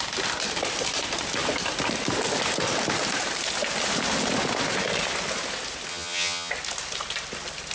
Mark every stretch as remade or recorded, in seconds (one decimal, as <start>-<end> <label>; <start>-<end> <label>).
0.0-5.9 recorded; 5.9-6.5 remade; 6.5-7.7 recorded

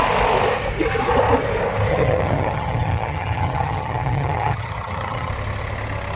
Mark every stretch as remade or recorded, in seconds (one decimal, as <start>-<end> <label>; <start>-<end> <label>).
0.0-1.9 recorded; 1.9-5.3 remade; 5.3-6.2 recorded

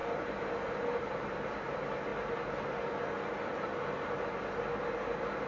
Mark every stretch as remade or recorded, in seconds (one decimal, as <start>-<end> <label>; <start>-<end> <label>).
0.0-5.5 recorded

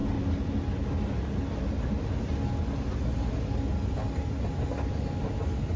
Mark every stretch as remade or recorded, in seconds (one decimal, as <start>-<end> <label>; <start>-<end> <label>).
0.0-5.8 recorded

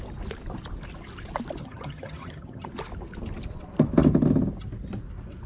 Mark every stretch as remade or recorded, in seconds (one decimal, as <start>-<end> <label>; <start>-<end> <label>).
0.0-1.6 recorded; 1.6-2.7 remade; 2.7-5.5 recorded

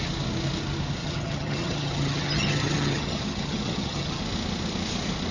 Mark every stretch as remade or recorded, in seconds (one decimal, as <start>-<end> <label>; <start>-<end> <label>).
0.0-1.0 recorded; 1.0-4.2 remade; 4.2-5.3 recorded

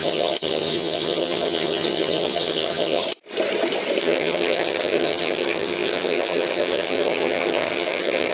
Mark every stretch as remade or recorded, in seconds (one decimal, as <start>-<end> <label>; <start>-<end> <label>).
0.0-3.0 remade; 3.0-4.0 recorded; 4.0-8.3 remade

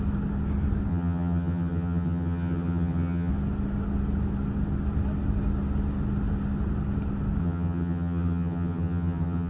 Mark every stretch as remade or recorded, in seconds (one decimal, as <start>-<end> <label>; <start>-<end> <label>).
0.0-0.9 recorded; 0.9-3.3 remade; 3.3-7.4 recorded; 7.4-9.5 remade